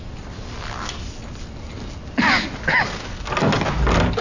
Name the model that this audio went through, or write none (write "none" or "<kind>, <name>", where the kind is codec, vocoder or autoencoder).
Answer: none